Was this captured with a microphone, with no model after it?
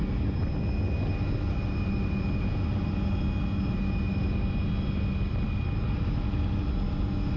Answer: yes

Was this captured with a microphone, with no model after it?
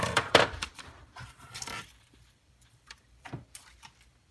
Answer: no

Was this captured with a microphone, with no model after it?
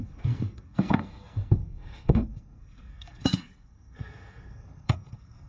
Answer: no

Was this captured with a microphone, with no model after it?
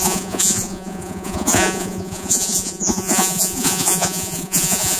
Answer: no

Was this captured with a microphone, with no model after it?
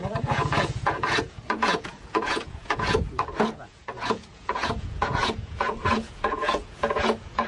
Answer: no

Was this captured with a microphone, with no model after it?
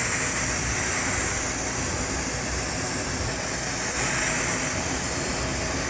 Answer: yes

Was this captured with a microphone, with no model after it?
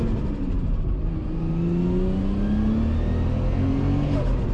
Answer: yes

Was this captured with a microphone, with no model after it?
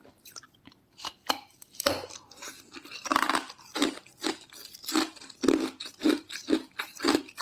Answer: yes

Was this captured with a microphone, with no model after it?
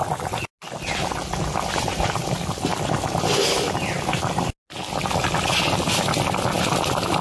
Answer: yes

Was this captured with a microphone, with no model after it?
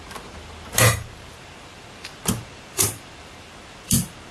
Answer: no